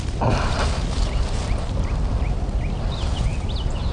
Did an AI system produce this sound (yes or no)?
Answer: no